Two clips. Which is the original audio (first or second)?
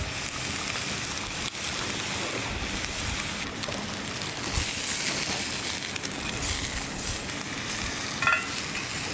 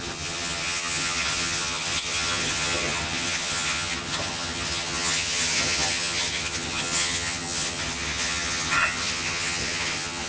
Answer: first